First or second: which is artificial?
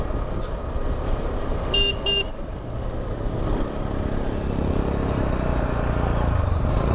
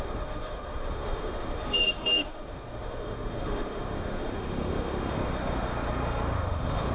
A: second